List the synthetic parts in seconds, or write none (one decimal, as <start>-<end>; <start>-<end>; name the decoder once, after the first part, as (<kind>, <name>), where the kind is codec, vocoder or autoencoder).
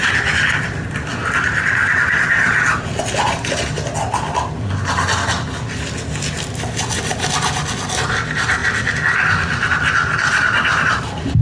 none